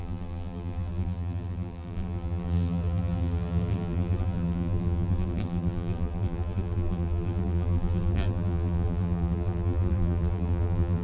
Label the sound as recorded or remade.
remade